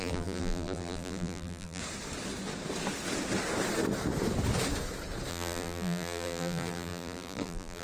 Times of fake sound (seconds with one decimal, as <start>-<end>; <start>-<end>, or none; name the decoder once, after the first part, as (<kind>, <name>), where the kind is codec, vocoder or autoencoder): 0.0-1.8 (vocoder, BigVGAN v2); 5.3-7.8